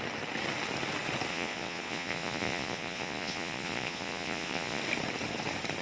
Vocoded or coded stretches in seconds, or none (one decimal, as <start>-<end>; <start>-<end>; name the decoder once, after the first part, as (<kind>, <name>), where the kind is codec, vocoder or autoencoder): 1.3-4.8 (vocoder, Vocos)